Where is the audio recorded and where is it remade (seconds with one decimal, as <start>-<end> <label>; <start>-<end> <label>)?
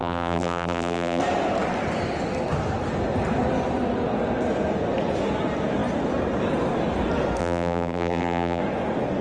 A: 0.0-1.2 remade; 1.2-7.4 recorded; 7.4-8.6 remade; 8.6-9.2 recorded